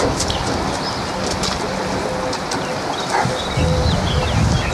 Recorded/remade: recorded